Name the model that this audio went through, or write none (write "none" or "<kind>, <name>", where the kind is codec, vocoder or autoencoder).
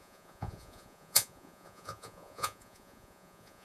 vocoder, Vocos